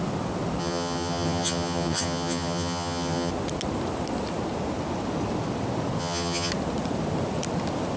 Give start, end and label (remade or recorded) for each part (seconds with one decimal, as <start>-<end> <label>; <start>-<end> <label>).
0.0-0.6 recorded; 0.6-3.3 remade; 3.3-6.0 recorded; 6.0-6.5 remade; 6.5-8.0 recorded